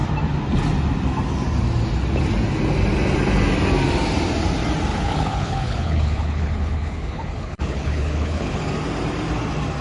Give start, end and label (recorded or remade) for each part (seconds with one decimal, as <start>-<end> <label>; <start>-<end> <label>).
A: 0.0-4.9 recorded; 4.9-8.6 remade; 8.6-9.8 recorded